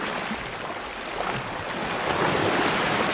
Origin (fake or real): real